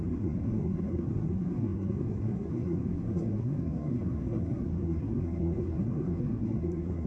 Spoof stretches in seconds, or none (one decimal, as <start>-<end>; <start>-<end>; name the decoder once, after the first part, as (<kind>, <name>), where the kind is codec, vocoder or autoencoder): 0.0-7.1 (codec, SNAC)